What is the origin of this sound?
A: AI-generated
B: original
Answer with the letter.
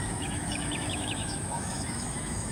A